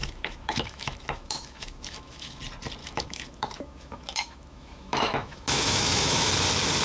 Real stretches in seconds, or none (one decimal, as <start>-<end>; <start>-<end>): 2.4-2.8; 6.3-6.8